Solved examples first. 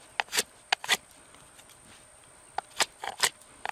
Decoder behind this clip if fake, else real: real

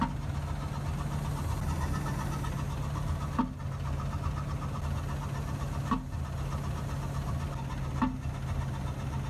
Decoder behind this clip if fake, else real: real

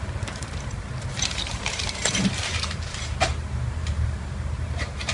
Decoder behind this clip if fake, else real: fake, vocoder, BigVGAN v2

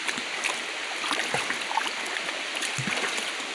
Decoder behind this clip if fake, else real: real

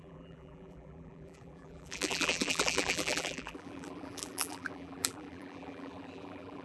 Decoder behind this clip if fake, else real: fake, vocoder, BigVGAN v2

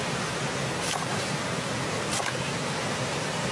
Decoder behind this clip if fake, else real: real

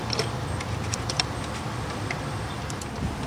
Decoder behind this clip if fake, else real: fake, vocoder, BigVGAN v2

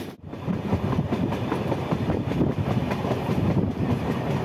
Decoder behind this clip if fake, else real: fake, vocoder, BigVGAN v2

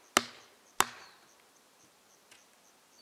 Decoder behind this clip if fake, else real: real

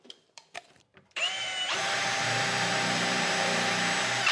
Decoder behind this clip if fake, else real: fake, vocoder, BigVGAN v2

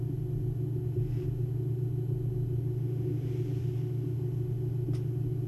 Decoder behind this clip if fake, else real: real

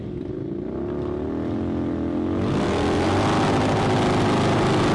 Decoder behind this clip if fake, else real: real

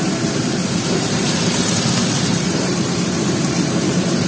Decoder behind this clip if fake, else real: fake, vocoder, BigVGAN v2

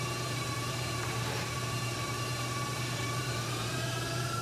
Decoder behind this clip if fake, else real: fake, vocoder, BigVGAN v2